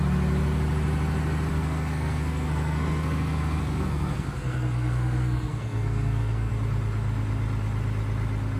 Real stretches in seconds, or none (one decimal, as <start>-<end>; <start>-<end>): 0.0-1.5; 6.5-8.6